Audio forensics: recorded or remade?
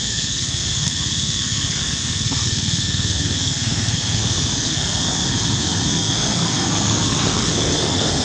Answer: remade